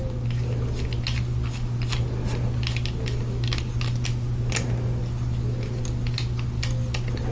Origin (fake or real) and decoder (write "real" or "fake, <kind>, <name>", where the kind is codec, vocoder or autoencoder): real